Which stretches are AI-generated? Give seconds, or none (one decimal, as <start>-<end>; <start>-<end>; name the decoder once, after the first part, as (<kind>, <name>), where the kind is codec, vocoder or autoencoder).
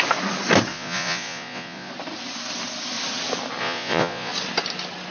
0.7-1.9 (vocoder, Vocos); 3.6-4.3